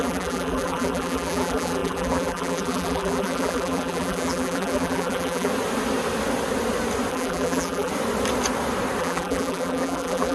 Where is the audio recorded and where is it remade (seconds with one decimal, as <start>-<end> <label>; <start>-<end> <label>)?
0.0-5.5 remade; 5.5-7.1 recorded; 7.1-7.9 remade; 7.9-9.0 recorded; 9.0-10.3 remade